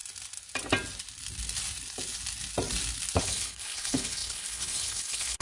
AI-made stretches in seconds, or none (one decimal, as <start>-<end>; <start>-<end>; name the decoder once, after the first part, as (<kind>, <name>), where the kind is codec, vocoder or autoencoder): 3.2-5.4 (codec, HILCodec)